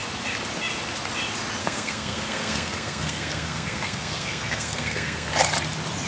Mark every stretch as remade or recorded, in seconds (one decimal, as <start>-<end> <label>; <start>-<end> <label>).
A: 0.0-1.6 recorded; 1.6-5.3 remade; 5.3-6.1 recorded